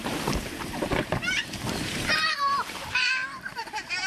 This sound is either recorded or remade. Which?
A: remade